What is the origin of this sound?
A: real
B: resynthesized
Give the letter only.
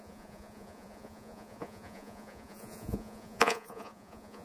B